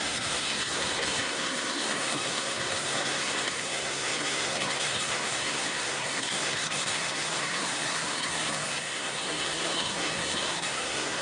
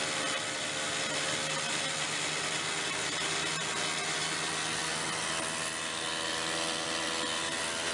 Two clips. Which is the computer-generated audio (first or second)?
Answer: first